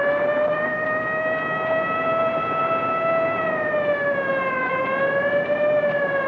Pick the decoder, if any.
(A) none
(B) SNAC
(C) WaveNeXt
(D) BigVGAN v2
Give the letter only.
A